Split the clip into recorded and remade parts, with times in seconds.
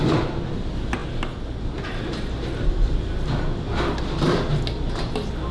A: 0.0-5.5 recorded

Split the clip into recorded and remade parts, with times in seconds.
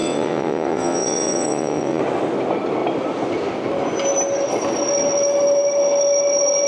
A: 0.0-2.0 remade; 2.0-6.7 recorded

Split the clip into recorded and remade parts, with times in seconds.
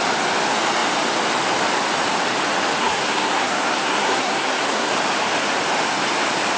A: 0.0-2.8 recorded; 2.8-4.9 remade; 4.9-6.6 recorded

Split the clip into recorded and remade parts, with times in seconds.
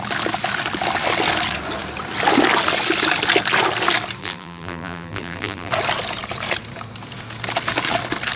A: 0.0-4.2 recorded; 4.2-5.7 remade; 5.7-8.4 recorded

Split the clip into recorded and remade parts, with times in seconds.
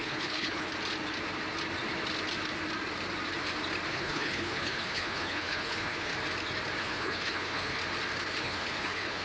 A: 0.0-0.7 remade; 0.7-3.9 recorded; 3.9-6.1 remade; 6.1-6.8 recorded; 6.8-7.8 remade; 7.8-8.4 recorded; 8.4-9.2 remade